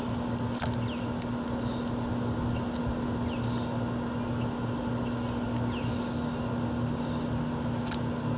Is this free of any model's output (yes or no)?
yes